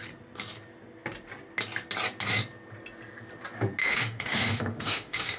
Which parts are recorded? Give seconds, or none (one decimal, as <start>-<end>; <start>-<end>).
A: 0.0-3.8